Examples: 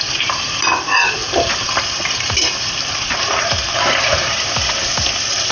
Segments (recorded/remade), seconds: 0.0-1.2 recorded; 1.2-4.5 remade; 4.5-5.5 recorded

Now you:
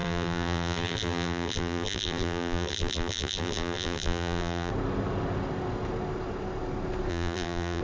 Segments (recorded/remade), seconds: 0.0-4.7 remade; 4.7-7.1 recorded; 7.1-7.8 remade

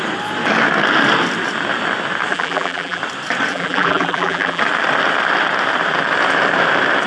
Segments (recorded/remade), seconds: 0.0-2.3 recorded; 2.3-3.0 remade; 3.0-3.5 recorded; 3.5-4.6 remade; 4.6-7.1 recorded

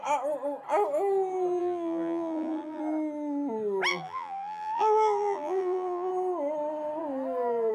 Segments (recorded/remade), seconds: 0.0-1.6 recorded; 1.6-2.8 remade; 2.8-3.9 recorded; 3.9-6.1 remade; 6.1-7.7 recorded

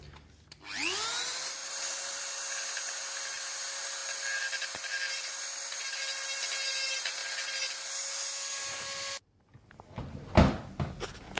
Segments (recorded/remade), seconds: 0.0-1.6 recorded; 1.6-2.3 remade; 2.3-4.0 recorded; 4.0-6.4 remade; 6.4-11.4 recorded

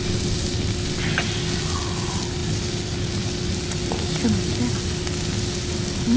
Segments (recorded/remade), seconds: 0.0-6.2 recorded

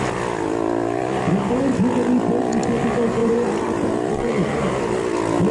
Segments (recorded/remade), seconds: 0.0-3.2 recorded; 3.2-4.6 remade; 4.6-5.5 recorded